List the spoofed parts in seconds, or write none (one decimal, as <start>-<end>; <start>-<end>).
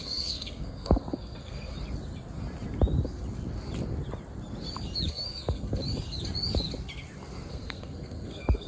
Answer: 0.0-1.7; 5.1-5.8; 7.5-8.7